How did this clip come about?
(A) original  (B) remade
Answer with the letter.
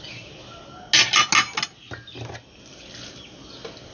A